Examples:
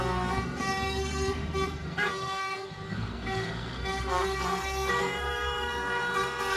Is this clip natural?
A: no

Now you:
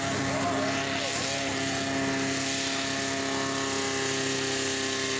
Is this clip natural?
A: yes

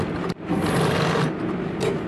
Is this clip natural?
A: yes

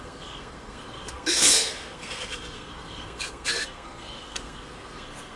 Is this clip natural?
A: no